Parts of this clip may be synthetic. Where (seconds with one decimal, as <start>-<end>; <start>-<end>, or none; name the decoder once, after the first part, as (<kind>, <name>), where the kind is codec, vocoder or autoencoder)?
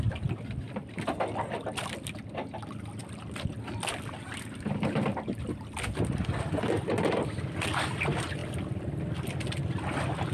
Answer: none